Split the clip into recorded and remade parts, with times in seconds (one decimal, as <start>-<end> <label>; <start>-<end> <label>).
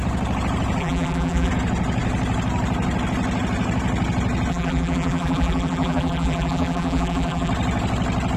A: 0.0-0.8 recorded; 0.8-1.5 remade; 1.5-4.5 recorded; 4.5-7.5 remade; 7.5-8.4 recorded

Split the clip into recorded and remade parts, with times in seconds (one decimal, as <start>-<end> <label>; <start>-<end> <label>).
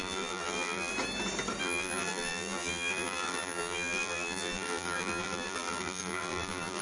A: 0.0-0.9 remade; 0.9-1.6 recorded; 1.6-6.8 remade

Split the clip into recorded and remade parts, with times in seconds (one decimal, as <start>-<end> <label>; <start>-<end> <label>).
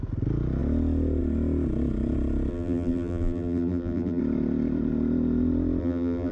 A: 0.0-2.5 recorded; 2.5-4.2 remade; 4.2-5.8 recorded; 5.8-6.3 remade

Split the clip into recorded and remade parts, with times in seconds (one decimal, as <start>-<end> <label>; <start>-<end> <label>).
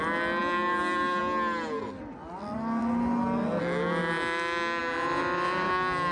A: 0.0-6.1 recorded